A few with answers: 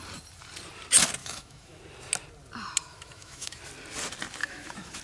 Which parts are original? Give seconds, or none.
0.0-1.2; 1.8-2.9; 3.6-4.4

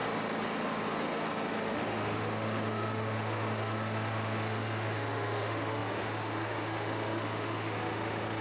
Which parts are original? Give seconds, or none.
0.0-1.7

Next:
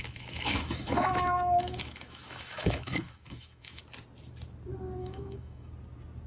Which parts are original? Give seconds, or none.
3.8-5.0; 5.7-6.3